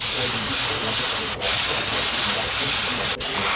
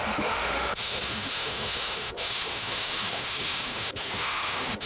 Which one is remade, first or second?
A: second